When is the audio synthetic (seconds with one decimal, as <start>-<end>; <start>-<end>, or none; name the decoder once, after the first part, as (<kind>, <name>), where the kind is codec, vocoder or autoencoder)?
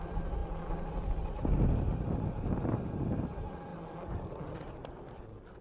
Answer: none